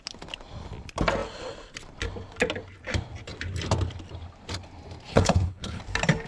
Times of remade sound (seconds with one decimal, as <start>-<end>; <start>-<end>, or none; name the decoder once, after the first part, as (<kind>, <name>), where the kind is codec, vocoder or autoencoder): 5.1-5.8 (codec, HILCodec)